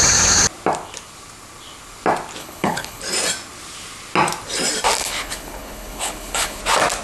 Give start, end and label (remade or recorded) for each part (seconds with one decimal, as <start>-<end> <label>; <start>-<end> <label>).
0.0-2.4 recorded; 2.4-3.0 remade; 3.0-5.0 recorded; 5.0-6.6 remade; 6.6-7.0 recorded